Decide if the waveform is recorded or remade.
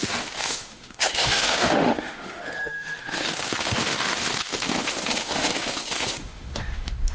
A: remade